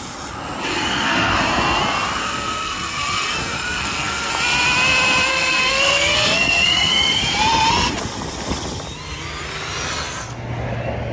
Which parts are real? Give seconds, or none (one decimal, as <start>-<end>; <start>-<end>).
0.0-0.7; 1.4-2.2; 4.3-5.3; 7.3-11.1